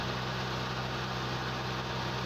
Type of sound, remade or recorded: recorded